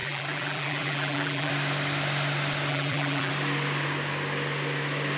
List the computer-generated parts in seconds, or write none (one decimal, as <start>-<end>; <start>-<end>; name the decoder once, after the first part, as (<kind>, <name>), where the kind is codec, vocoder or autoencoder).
0.0-1.5 (vocoder, BigVGAN v2); 2.7-3.3